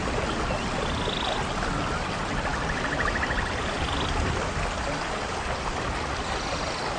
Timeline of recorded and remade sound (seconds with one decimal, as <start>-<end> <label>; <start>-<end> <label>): 0.0-7.0 recorded